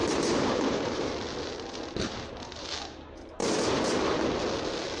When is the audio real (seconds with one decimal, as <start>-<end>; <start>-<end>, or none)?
1.1-3.4; 4.0-5.0